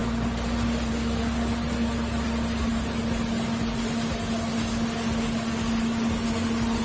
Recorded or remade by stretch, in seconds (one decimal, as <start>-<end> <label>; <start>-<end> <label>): 0.0-6.8 recorded